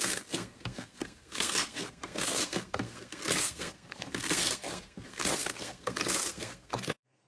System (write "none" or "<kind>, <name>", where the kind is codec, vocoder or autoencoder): codec, SNAC